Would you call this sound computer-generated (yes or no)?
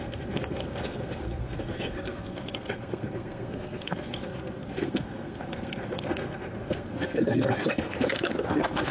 yes